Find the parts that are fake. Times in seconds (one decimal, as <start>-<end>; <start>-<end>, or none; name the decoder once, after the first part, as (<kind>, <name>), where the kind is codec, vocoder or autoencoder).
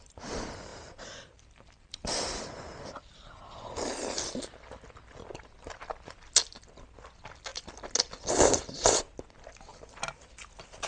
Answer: 0.7-3.4 (vocoder, BigVGAN v2); 9.7-10.4